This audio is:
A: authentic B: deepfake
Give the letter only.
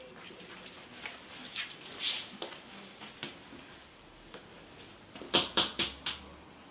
A